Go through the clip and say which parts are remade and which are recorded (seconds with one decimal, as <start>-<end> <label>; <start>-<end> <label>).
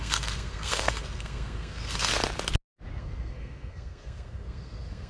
0.0-2.1 remade; 2.1-3.0 recorded; 3.0-5.1 remade